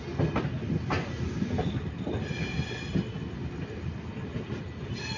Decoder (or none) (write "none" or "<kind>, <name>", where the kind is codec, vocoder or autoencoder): none